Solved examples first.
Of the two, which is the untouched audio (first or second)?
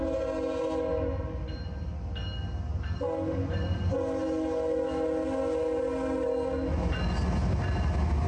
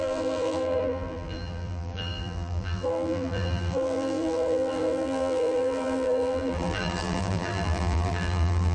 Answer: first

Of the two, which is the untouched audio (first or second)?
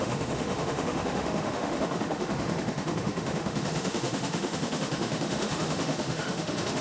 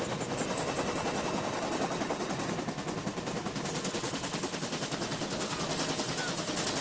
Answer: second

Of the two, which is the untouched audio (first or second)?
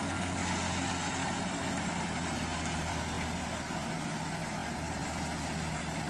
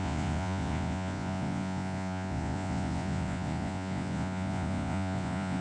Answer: first